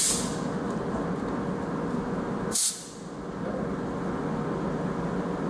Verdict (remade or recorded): recorded